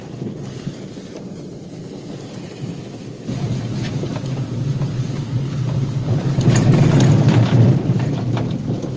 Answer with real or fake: real